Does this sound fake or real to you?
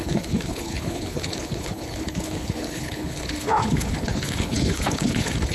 fake